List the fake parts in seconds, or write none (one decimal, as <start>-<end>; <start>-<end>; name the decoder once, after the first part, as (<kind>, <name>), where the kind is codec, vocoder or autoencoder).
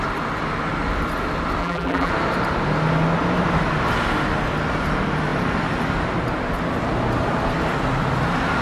1.6-2.1 (vocoder, BigVGAN v2)